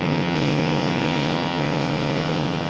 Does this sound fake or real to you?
fake